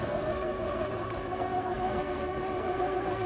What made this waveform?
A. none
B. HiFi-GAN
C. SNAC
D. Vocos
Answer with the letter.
C